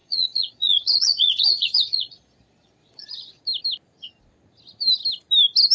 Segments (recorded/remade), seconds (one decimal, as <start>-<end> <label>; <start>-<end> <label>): 0.0-3.4 remade; 3.4-5.7 recorded